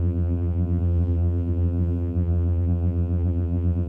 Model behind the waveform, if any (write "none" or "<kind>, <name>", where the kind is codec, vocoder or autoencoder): vocoder, BigVGAN v2